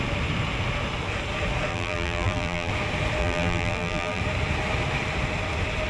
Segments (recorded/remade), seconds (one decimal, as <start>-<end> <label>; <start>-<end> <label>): 0.0-1.7 recorded; 1.7-2.7 remade; 2.7-3.2 recorded; 3.2-4.2 remade; 4.2-5.9 recorded